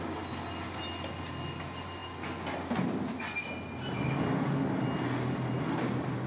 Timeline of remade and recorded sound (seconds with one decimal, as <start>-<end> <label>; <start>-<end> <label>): 0.0-6.3 recorded